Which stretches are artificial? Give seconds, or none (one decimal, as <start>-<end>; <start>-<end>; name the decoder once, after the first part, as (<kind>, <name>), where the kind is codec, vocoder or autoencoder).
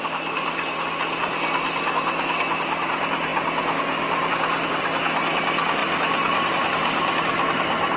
none